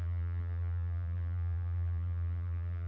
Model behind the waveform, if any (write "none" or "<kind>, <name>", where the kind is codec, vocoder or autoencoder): vocoder, BigVGAN v2